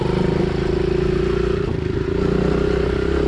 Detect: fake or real real